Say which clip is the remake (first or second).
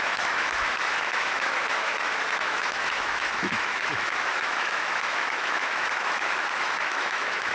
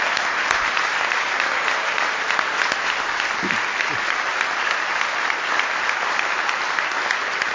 first